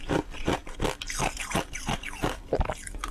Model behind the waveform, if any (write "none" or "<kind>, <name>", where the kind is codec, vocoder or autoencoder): none